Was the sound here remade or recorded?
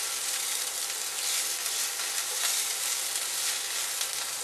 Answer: recorded